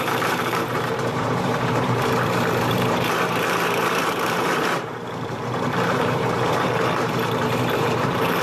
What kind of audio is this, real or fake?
fake